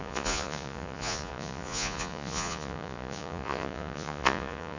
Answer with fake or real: fake